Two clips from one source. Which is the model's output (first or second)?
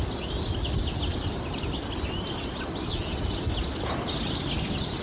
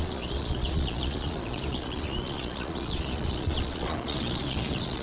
second